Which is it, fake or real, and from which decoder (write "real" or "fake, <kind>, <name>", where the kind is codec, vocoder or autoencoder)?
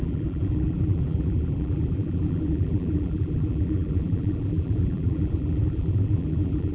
fake, vocoder, BigVGAN v2